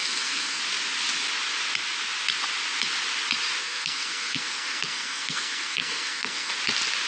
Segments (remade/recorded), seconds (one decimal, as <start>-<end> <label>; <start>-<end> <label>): 0.0-0.6 remade; 0.6-3.6 recorded; 3.6-6.6 remade; 6.6-7.1 recorded